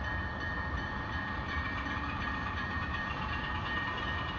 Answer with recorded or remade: remade